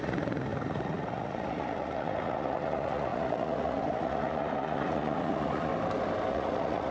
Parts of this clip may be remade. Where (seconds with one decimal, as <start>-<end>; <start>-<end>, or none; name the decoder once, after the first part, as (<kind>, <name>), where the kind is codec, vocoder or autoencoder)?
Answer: 0.0-5.7 (vocoder, Vocos); 6.3-6.9